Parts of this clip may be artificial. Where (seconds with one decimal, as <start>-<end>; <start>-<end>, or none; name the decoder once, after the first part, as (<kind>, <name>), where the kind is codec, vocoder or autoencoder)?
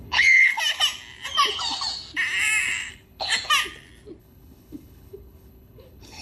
0.0-0.5 (codec, HILCodec); 2.9-3.3; 4.2-6.2